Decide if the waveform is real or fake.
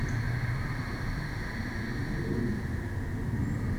real